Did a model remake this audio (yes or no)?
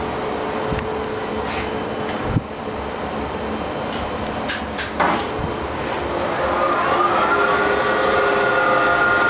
no